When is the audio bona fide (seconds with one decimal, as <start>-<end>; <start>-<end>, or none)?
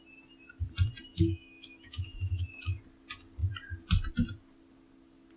0.0-1.1; 2.8-5.4